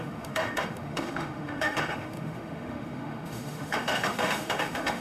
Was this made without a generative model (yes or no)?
no